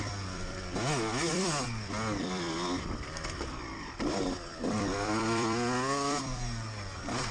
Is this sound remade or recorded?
remade